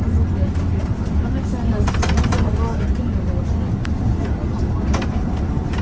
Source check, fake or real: real